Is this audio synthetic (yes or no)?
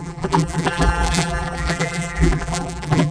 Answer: yes